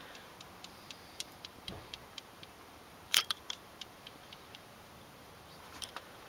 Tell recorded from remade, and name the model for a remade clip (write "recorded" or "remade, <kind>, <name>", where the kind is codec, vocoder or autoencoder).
remade, vocoder, BigVGAN v2